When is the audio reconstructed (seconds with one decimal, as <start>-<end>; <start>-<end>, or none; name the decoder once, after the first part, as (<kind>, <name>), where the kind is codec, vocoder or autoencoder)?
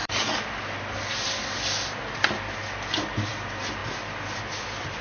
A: none